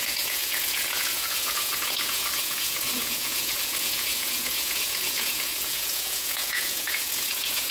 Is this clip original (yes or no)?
no